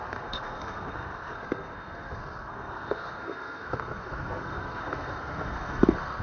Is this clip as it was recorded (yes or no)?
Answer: no